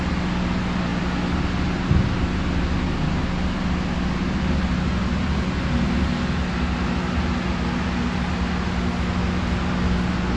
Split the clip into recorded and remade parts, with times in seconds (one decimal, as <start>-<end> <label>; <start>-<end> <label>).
0.0-10.4 recorded